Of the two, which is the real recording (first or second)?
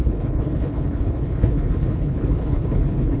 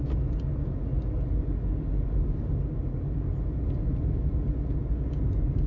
second